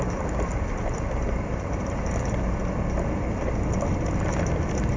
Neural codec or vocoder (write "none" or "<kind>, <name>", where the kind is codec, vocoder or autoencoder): none